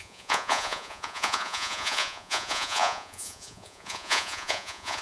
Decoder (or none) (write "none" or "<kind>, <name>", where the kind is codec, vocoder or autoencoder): vocoder, Vocos